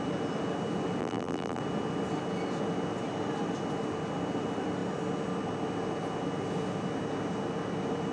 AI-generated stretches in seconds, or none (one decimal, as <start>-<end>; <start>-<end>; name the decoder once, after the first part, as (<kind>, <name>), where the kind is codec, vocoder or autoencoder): 1.0-1.6 (vocoder, BigVGAN v2)